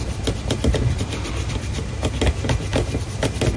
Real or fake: real